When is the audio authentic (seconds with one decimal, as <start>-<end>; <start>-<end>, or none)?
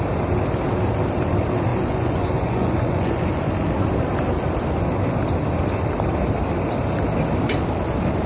0.0-1.7; 3.5-8.3